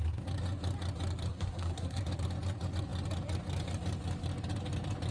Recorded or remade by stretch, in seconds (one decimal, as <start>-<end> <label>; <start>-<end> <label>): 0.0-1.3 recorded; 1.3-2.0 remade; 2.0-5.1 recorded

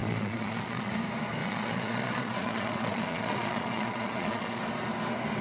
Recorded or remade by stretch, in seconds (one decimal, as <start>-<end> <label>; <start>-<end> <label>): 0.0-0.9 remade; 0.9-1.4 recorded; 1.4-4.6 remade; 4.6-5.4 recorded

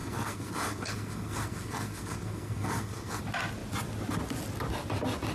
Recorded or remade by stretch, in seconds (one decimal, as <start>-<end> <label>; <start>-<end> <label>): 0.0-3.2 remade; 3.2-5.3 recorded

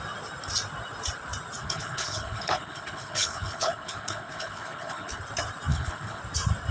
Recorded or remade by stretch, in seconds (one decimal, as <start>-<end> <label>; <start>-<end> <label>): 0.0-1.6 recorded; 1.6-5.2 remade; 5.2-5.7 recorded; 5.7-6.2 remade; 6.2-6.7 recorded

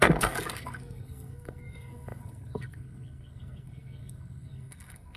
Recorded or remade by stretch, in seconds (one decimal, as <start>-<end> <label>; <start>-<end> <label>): 0.0-5.2 remade

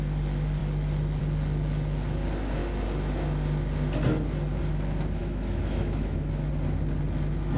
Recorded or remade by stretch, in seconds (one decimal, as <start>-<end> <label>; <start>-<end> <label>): 0.0-5.2 recorded; 5.2-6.5 remade; 6.5-7.6 recorded

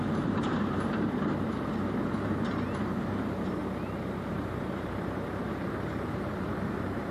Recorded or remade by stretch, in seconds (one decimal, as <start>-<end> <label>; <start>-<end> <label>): 0.0-3.6 remade; 3.6-4.3 recorded; 4.3-7.1 remade

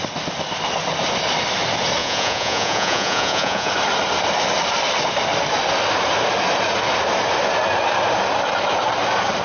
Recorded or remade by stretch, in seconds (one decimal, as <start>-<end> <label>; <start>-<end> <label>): 0.0-2.0 recorded; 2.0-3.7 remade; 3.7-9.4 recorded